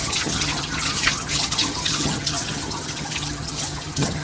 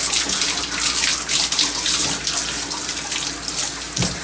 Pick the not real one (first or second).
first